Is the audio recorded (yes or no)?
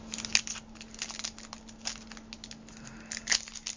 yes